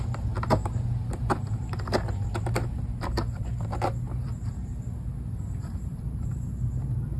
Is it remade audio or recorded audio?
remade